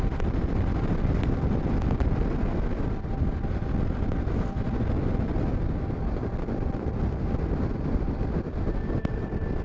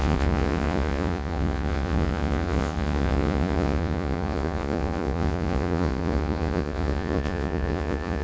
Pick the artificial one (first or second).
second